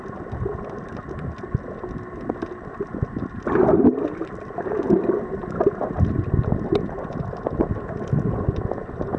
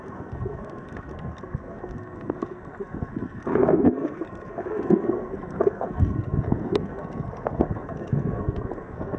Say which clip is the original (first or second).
first